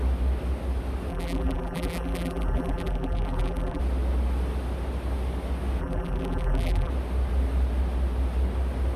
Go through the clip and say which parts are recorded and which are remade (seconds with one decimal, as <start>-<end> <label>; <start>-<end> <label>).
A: 0.0-1.1 recorded; 1.1-3.8 remade; 3.8-5.8 recorded; 5.8-6.9 remade; 6.9-9.0 recorded

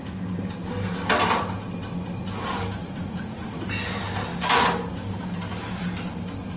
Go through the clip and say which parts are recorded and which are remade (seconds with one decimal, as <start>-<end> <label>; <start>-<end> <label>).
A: 0.0-2.8 recorded; 2.8-3.6 remade; 3.6-6.6 recorded

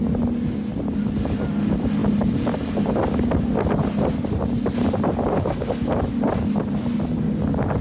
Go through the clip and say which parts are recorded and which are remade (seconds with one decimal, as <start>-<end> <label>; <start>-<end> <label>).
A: 0.0-7.8 recorded